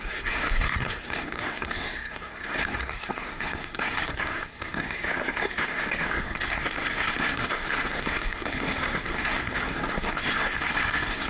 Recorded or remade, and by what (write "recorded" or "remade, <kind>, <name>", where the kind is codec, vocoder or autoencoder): remade, codec, SNAC